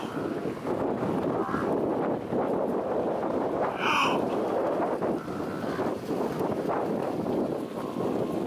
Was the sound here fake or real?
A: real